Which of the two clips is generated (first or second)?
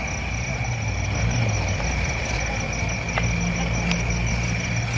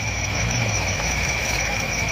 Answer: second